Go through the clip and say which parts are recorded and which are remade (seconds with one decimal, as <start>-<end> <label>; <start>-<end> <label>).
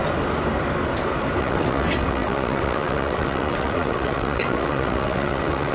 0.0-1.4 recorded; 1.4-5.7 remade